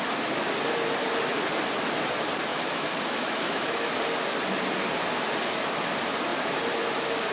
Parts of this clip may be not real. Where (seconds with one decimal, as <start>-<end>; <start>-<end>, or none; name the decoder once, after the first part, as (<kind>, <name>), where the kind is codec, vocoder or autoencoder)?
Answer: 2.5-3.9 (autoencoder, DAC-VAE)